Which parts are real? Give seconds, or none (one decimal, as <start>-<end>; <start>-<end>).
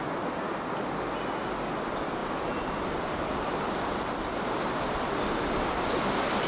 0.0-2.2; 5.9-6.5